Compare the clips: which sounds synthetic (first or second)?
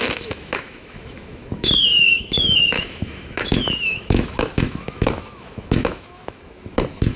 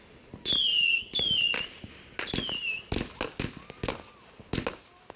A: first